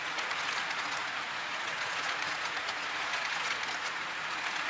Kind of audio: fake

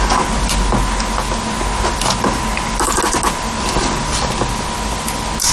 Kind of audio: real